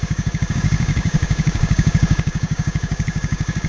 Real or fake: fake